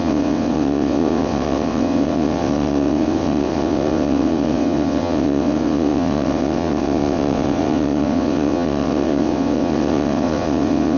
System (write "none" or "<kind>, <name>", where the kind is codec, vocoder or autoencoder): vocoder, WaveNeXt